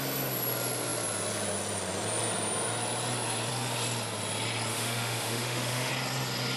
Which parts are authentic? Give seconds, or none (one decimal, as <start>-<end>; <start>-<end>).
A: 0.0-4.7; 5.9-6.6